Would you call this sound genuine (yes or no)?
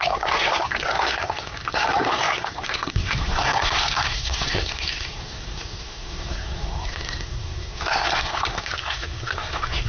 no